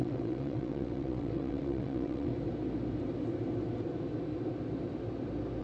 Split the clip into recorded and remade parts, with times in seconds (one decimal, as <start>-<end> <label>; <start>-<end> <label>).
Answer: 0.0-2.3 remade; 2.3-5.6 recorded